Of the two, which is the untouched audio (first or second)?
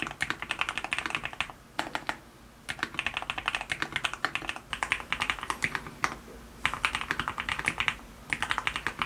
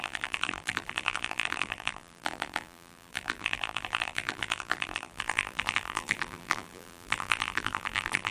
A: first